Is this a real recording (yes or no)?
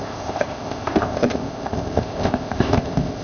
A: no